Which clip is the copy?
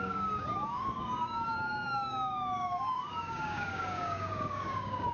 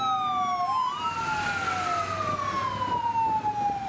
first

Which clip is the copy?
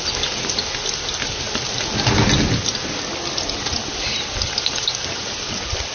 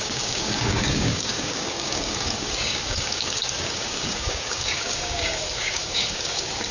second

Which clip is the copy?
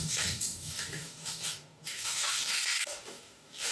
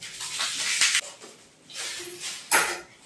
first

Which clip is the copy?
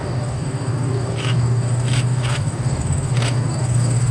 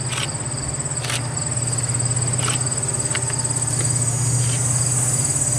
first